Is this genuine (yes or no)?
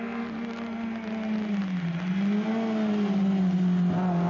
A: yes